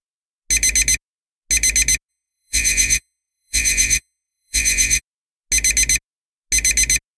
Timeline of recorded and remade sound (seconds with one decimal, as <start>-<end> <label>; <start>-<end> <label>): 0.0-2.1 recorded; 2.1-5.0 remade; 5.0-7.2 recorded